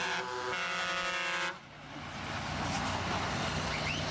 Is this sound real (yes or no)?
yes